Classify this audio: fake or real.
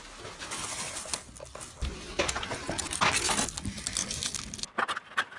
real